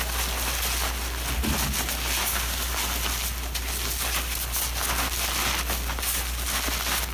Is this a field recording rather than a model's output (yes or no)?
yes